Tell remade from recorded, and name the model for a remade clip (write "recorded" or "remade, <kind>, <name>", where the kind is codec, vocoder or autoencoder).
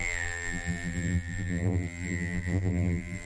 remade, vocoder, BigVGAN v2